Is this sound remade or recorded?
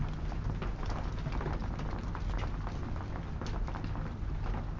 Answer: recorded